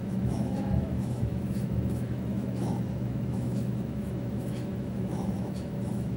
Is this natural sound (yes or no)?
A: no